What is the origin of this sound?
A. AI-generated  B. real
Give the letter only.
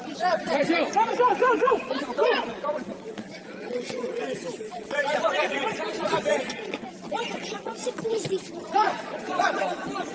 A